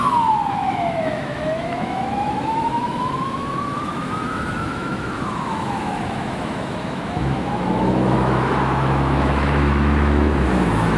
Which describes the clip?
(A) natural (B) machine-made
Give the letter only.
B